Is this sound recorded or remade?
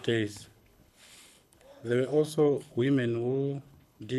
remade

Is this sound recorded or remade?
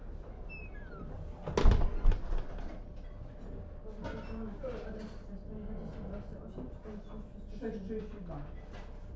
recorded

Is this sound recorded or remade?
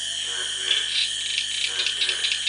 recorded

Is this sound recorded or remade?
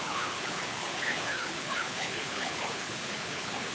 remade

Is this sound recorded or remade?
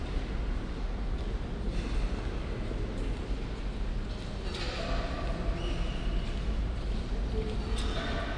recorded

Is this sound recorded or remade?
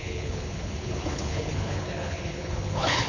remade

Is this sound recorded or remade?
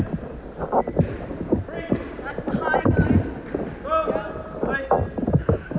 recorded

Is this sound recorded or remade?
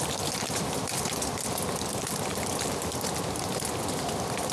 recorded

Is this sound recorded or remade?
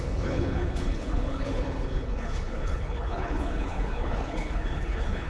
remade